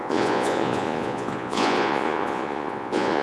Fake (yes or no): yes